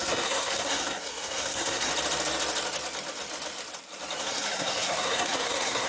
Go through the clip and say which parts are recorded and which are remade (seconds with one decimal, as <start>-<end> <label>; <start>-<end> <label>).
0.0-1.9 remade; 1.9-4.2 recorded; 4.2-5.9 remade